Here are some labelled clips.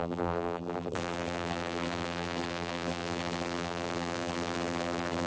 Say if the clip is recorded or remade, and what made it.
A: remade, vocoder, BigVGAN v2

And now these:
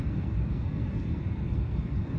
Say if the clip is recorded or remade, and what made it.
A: remade, codec, SNAC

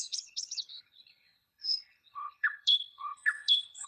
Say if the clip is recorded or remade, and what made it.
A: remade, codec, HILCodec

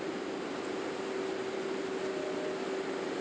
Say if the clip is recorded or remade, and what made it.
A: recorded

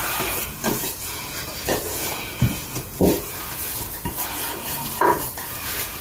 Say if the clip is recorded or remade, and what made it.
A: remade, vocoder, Vocos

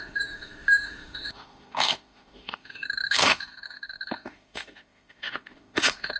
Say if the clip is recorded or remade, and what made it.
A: remade, autoencoder, DAC-VAE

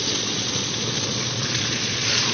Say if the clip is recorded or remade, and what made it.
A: remade, vocoder, Vocos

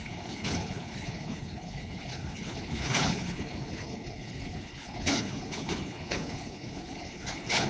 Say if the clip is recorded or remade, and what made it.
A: remade, codec, HILCodec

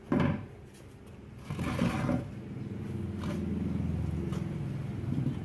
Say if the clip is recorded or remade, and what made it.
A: recorded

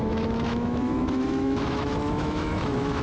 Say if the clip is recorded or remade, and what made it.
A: remade, autoencoder, DAC-VAE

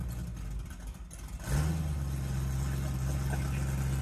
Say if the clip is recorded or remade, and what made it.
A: recorded